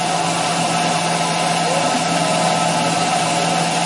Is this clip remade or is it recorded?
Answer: recorded